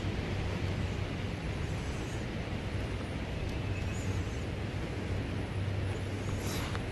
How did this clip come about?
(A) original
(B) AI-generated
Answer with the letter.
A